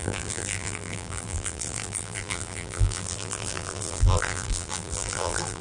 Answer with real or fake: fake